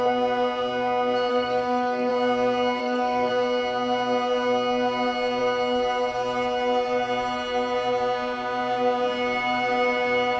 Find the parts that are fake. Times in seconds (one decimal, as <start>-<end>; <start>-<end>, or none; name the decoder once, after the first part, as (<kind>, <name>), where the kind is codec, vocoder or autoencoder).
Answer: 1.3-2.1 (codec, SNAC); 2.8-3.3